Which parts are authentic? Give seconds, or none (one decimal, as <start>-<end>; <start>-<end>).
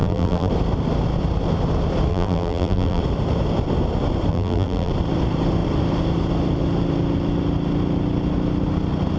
0.5-2.1; 3.0-4.3; 4.9-9.2